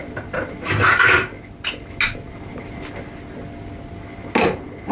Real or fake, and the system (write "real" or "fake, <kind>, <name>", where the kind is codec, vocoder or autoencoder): real